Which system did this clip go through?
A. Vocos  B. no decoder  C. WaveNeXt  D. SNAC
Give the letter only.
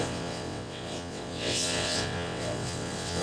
C